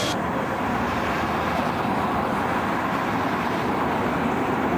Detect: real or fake real